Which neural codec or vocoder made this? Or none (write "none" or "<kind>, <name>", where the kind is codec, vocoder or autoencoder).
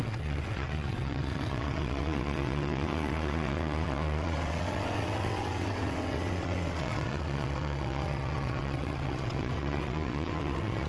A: vocoder, WaveNeXt